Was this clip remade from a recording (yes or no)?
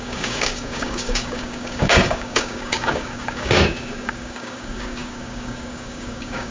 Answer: yes